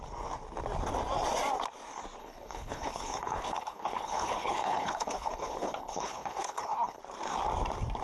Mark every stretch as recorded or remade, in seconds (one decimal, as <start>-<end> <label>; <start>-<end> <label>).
0.0-2.2 recorded; 2.2-7.0 remade; 7.0-8.0 recorded